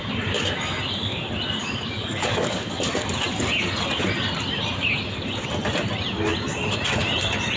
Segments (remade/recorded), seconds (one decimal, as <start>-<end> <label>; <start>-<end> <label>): 0.0-1.6 recorded; 1.6-2.9 remade; 2.9-7.6 recorded